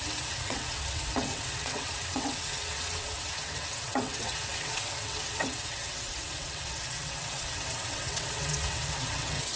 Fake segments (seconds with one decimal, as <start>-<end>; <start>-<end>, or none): 0.0-9.6

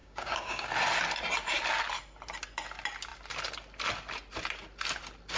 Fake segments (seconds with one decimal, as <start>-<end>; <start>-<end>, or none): 0.0-0.7

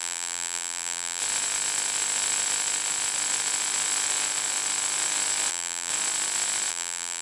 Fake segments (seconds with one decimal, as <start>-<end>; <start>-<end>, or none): 0.0-1.2; 5.5-5.9; 6.7-7.2

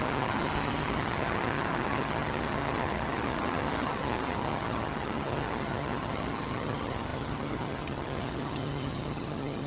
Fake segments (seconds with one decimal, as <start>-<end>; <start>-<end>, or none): 0.0-9.7

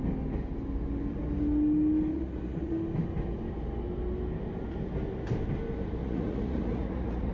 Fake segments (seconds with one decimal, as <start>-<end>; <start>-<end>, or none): 2.1-2.7; 6.0-7.3